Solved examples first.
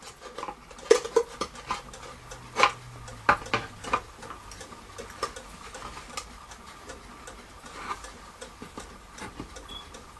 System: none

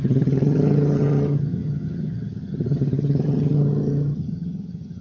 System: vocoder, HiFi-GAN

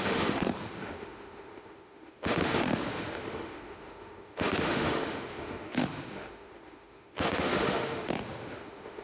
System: autoencoder, DAC-VAE